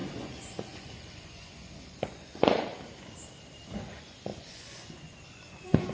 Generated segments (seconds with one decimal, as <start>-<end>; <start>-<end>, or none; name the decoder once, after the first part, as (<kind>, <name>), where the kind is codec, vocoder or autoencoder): 0.0-2.7 (vocoder, Vocos); 3.7-5.9